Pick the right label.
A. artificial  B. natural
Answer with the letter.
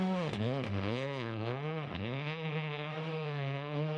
A